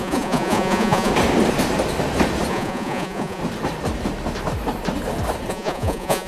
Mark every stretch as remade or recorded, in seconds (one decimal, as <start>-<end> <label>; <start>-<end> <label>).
0.0-1.1 remade; 1.1-2.5 recorded; 2.5-3.4 remade; 3.4-5.5 recorded; 5.5-6.3 remade